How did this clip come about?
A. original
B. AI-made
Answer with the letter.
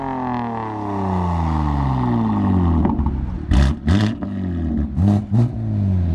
A